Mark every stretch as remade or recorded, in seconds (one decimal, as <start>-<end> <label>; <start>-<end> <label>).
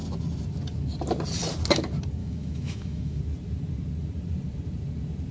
0.0-2.2 recorded; 2.2-3.2 remade; 3.2-5.3 recorded